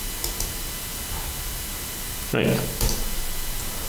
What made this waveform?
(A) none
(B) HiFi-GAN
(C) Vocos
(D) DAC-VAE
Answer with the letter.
A